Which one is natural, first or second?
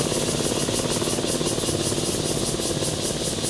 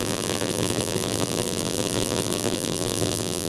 first